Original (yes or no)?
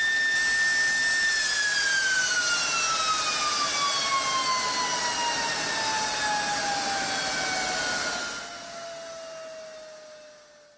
yes